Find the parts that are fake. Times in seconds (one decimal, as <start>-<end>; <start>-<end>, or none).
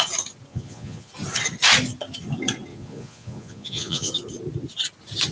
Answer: 0.5-1.1; 2.7-4.1